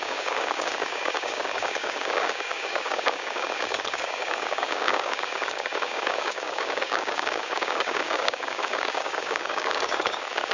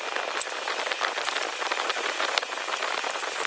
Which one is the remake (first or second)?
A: first